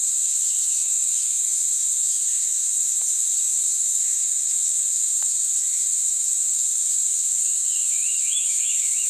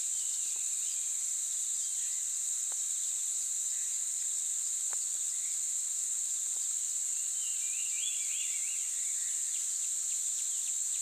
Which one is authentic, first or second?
second